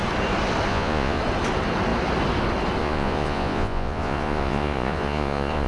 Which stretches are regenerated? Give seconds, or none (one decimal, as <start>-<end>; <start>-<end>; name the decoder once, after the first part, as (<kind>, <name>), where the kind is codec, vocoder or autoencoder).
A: 0.7-1.2 (vocoder, Vocos); 2.8-5.7